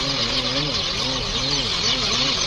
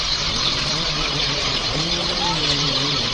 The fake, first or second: second